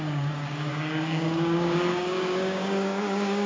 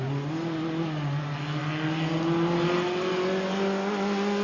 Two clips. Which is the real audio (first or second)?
second